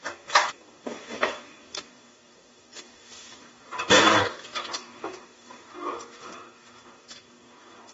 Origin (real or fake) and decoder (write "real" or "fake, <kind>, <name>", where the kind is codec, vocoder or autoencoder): fake, codec, DAC